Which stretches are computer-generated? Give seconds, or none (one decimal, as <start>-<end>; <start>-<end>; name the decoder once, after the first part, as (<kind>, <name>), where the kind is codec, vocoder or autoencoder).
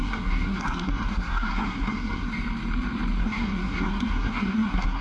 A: 0.0-2.3 (codec, SNAC); 3.2-5.0